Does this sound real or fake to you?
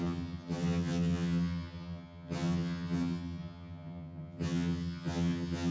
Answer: fake